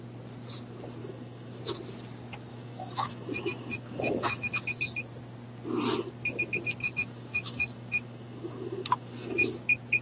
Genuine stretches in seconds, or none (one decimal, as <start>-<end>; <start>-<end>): 0.0-1.0; 1.6-2.5; 4.5-6.8; 9.5-10.0